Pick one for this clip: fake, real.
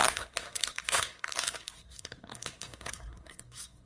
fake